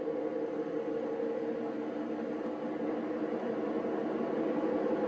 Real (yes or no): yes